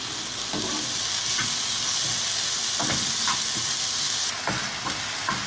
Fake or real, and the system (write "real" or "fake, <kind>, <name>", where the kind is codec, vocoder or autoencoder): real